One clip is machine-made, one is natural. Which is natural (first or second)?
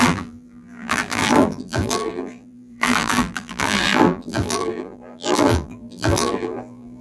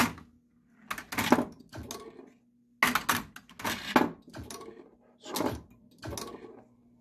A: second